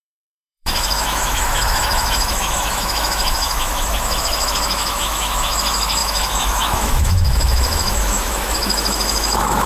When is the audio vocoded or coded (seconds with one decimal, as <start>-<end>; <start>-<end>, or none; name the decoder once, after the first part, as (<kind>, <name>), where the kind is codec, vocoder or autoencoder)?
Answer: 0.0-9.7 (autoencoder, DAC-VAE)